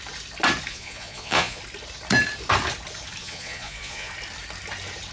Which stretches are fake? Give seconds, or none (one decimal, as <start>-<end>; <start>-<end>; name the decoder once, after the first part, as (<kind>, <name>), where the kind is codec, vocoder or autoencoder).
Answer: 0.7-1.6 (vocoder, Vocos); 3.2-4.1